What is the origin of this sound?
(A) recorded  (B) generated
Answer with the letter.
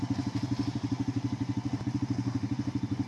A